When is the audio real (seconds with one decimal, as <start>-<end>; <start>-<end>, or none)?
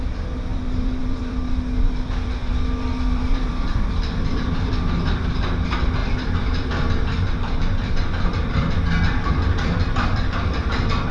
0.0-0.5; 4.9-6.0; 8.8-11.1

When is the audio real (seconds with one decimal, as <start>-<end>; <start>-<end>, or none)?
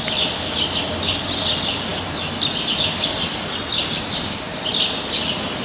0.0-5.6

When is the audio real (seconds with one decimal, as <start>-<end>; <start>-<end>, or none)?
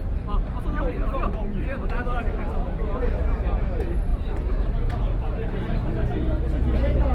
none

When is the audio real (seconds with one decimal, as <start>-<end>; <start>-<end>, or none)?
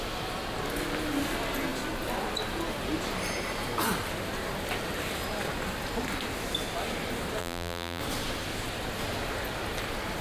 0.0-7.4; 8.0-10.2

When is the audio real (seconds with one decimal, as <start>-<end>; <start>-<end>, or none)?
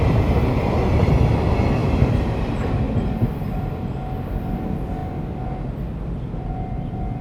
0.0-1.8; 2.7-7.2